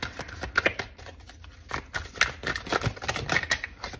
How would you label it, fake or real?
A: real